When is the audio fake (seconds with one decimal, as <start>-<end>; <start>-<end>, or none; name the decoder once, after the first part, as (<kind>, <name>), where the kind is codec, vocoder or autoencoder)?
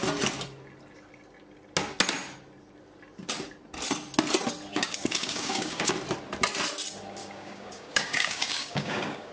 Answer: 4.7-5.9 (codec, DAC); 7.2-9.3